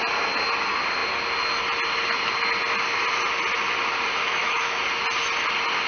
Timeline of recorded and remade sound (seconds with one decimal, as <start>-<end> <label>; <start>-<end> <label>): 0.0-4.2 recorded; 4.2-4.8 remade; 4.8-5.9 recorded